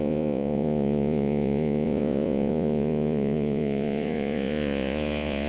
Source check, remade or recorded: remade